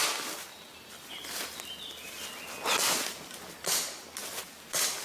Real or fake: real